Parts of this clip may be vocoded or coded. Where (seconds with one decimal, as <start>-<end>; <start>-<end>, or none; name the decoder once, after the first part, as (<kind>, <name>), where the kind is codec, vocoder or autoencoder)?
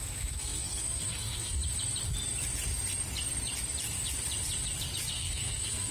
0.0-1.6 (codec, SNAC); 5.1-5.9